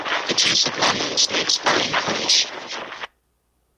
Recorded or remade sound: recorded